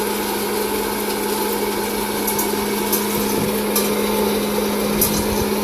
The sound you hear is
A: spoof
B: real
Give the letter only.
B